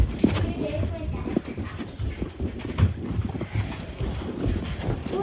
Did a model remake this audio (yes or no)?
no